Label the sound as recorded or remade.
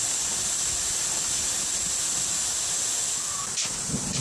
recorded